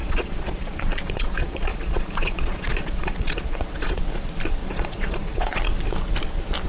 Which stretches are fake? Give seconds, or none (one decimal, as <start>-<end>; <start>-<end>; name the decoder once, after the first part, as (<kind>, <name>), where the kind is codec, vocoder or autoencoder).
0.0-4.0 (vocoder, Vocos); 4.6-5.6